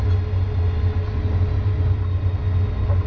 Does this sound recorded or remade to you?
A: recorded